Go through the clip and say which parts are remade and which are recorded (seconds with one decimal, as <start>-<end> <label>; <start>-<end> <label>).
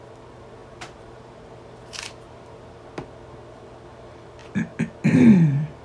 0.0-0.6 recorded; 0.6-2.8 remade; 2.8-5.8 recorded